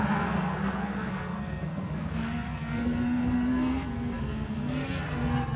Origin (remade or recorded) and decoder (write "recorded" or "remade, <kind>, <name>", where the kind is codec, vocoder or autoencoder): remade, codec, SNAC